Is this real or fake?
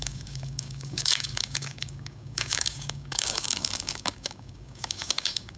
fake